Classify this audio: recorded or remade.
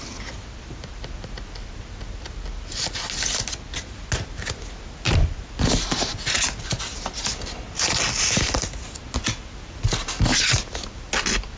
recorded